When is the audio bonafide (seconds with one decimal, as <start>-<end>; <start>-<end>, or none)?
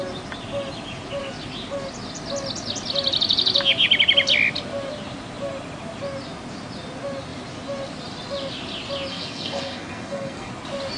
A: 0.0-9.1; 10.5-11.0